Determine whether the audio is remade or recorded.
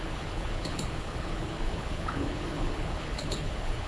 remade